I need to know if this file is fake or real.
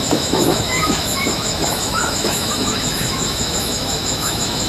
fake